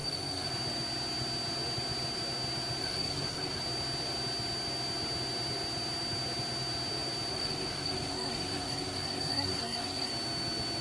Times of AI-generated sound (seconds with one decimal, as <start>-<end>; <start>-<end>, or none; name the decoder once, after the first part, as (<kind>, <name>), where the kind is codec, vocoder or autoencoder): 0.0-0.5 (codec, SNAC); 2.8-3.6; 7.3-10.1